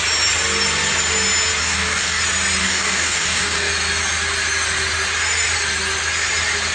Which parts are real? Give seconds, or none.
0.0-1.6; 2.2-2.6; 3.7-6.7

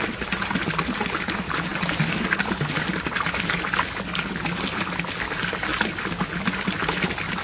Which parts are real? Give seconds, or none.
0.0-7.4

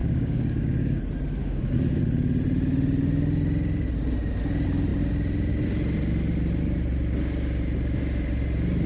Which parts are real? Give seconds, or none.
1.0-1.4; 2.0-8.9

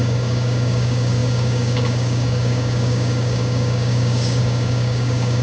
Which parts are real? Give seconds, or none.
none

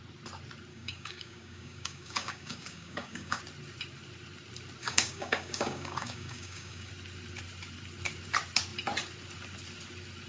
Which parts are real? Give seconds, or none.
0.0-0.7; 3.4-4.8; 6.9-10.3

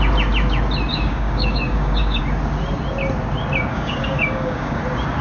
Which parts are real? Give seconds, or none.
0.0-0.9; 2.2-3.7; 4.8-5.2

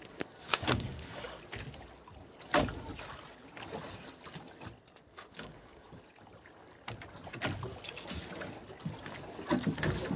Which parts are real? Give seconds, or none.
0.0-0.5; 1.4-5.1; 6.0-10.2